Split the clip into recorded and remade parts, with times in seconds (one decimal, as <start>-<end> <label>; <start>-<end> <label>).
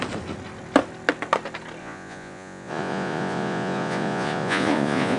0.0-1.8 recorded; 1.8-5.2 remade